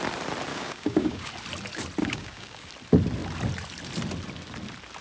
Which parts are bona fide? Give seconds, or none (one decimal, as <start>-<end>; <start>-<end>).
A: 0.0-0.5; 1.3-2.0; 2.7-5.0